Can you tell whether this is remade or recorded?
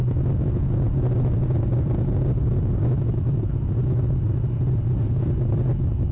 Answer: recorded